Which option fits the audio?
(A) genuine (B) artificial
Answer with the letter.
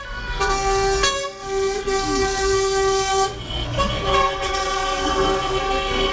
B